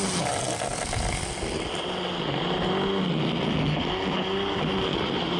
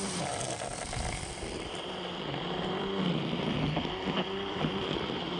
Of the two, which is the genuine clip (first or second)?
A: first